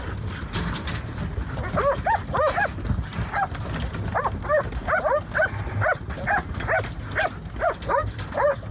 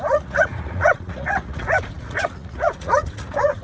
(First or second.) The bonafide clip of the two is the first